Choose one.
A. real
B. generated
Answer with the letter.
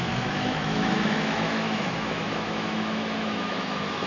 B